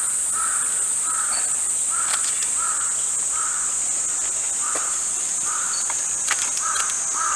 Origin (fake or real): real